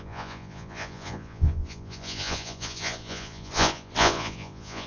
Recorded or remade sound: remade